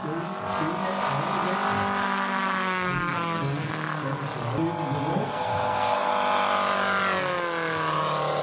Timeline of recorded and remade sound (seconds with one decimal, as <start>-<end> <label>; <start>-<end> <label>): 0.0-2.0 recorded; 2.0-4.2 remade; 4.2-5.1 recorded; 5.1-6.1 remade; 6.1-8.4 recorded